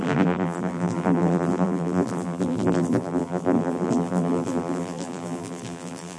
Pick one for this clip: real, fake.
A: fake